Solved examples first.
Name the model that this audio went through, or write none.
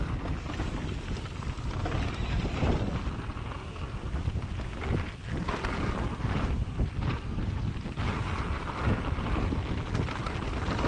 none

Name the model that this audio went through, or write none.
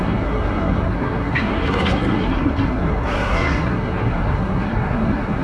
codec, SNAC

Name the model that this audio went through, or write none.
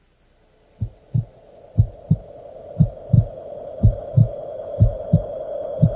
none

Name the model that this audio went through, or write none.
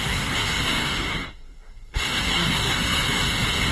codec, SNAC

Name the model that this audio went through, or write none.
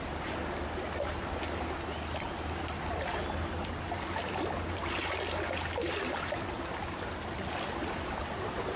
vocoder, BigVGAN v2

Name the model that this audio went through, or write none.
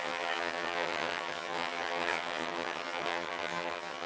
vocoder, HiFi-GAN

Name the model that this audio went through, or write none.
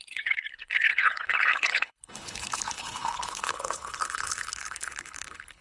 codec, HILCodec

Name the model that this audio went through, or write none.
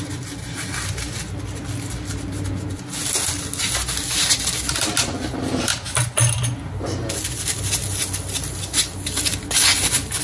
none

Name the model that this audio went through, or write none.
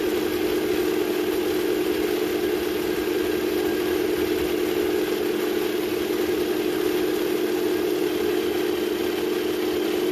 none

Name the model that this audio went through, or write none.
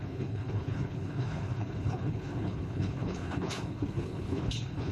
codec, HILCodec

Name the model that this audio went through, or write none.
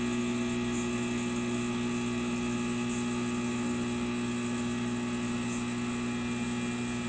none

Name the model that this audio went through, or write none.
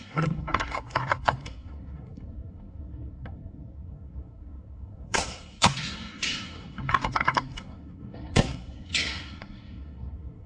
codec, SNAC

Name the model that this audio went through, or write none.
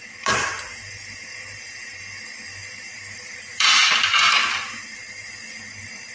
vocoder, BigVGAN v2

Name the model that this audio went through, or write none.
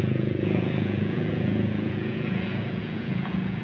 vocoder, Vocos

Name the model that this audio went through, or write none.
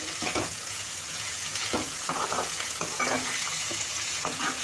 vocoder, Vocos